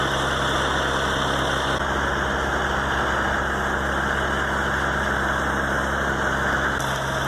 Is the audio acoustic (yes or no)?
yes